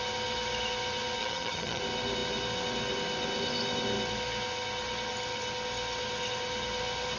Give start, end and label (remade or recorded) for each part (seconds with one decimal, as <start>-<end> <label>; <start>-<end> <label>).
0.0-1.2 recorded; 1.2-1.8 remade; 1.8-7.2 recorded

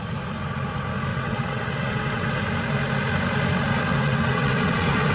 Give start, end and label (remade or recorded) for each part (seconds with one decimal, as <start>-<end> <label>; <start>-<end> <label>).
0.0-1.1 recorded; 1.1-2.3 remade; 2.3-3.9 recorded; 3.9-5.1 remade

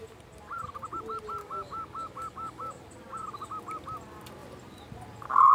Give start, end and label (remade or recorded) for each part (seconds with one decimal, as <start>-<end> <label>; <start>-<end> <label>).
0.0-1.4 recorded; 1.4-2.9 remade; 2.9-5.5 recorded